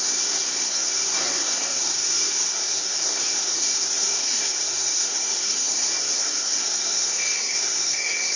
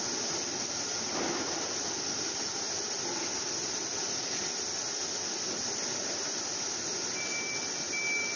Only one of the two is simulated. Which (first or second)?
first